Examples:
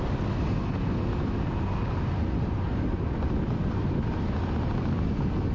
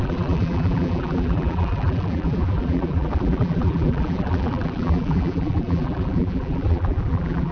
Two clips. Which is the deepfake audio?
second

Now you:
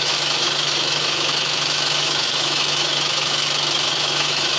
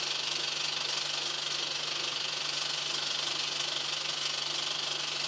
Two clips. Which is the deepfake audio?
first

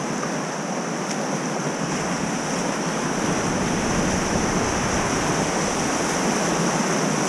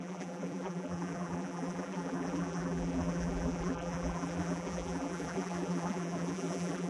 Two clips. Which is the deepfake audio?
second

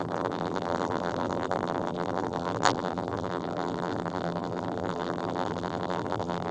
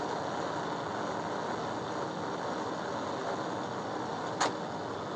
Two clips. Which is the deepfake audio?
first